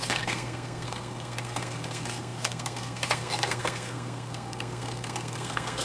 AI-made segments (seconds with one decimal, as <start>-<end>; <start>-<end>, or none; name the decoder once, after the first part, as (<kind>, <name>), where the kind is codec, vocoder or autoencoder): 0.0-5.8 (codec, SNAC)